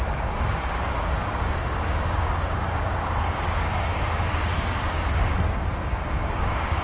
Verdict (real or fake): fake